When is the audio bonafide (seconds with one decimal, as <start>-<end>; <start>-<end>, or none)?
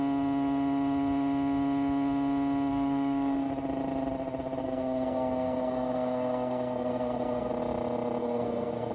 0.0-2.7; 3.5-4.6; 7.5-8.2